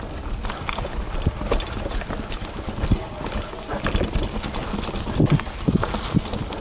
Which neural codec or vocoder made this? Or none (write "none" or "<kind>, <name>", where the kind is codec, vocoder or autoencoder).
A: none